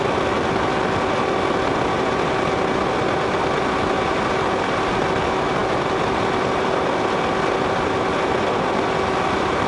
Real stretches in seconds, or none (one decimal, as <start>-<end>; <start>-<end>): 0.0-9.7